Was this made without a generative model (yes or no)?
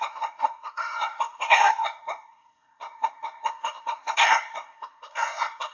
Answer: no